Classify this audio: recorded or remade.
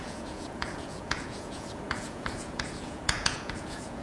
remade